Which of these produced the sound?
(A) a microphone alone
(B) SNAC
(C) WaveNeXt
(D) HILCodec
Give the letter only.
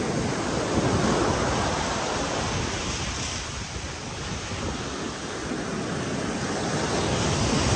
A